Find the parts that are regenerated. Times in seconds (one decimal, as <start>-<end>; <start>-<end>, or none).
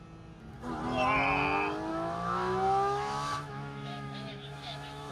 1.9-5.1